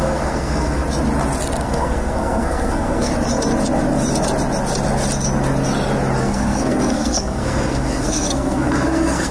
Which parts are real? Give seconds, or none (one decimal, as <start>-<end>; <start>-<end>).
0.8-1.6; 3.1-6.2